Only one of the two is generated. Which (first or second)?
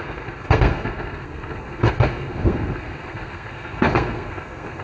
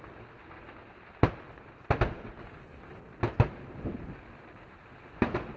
first